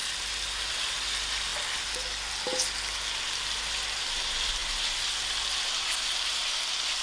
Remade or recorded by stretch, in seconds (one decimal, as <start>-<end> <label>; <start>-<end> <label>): 0.0-7.0 recorded